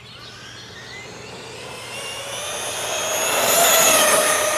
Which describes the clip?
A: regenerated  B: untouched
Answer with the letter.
B